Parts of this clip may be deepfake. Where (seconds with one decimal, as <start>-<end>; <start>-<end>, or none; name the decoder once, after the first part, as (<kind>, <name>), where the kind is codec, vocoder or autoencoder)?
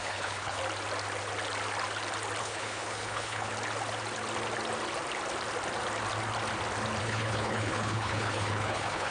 0.0-0.6 (codec, HILCodec); 2.4-3.5; 7.0-9.1